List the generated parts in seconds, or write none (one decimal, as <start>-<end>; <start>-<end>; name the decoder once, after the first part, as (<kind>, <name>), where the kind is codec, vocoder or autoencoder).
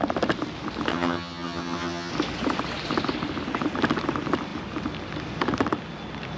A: 0.9-2.1 (vocoder, HiFi-GAN)